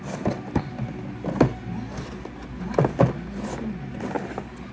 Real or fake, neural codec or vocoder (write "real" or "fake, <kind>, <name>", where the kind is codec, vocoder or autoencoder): real